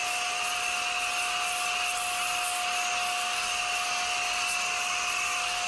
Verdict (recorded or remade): recorded